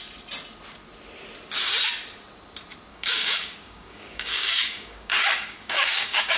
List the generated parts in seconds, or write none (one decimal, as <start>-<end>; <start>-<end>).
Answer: 2.9-6.4